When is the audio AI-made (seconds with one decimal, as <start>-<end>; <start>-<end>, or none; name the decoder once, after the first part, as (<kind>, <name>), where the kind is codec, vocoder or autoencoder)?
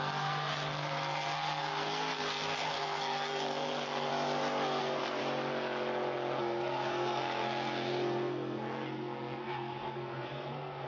0.0-4.1 (codec, SNAC); 4.8-5.2; 6.4-10.9